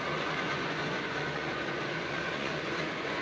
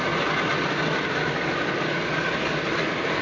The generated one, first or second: first